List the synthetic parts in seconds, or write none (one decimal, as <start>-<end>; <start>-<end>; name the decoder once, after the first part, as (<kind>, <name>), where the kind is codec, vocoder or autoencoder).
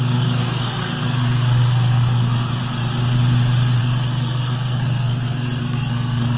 0.0-2.6 (codec, SNAC); 3.8-6.4